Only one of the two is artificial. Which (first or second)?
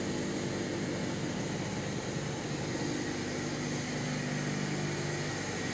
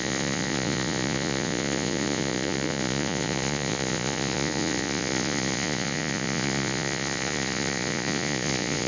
second